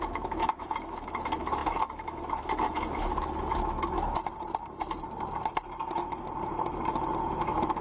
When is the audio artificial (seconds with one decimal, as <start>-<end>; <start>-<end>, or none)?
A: 0.0-4.2; 7.3-7.8